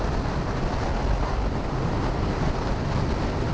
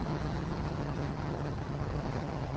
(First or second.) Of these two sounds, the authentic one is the first